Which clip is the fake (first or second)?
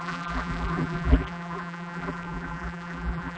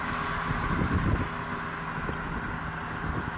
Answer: first